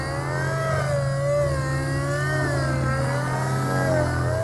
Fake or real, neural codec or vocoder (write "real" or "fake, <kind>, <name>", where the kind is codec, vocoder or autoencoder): real